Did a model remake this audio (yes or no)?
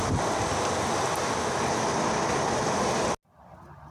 no